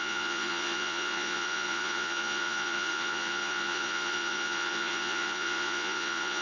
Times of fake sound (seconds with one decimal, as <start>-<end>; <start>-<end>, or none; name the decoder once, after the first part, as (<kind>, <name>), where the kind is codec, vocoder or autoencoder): 0.0-6.4 (vocoder, Vocos)